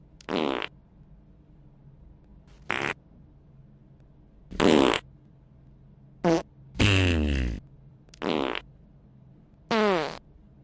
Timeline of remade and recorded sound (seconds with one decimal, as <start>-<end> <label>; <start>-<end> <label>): 0.0-10.6 recorded